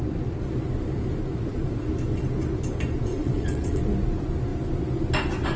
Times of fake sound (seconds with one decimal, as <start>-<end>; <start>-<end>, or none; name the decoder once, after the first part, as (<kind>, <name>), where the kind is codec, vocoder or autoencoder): 3.1-3.8 (vocoder, WaveNeXt)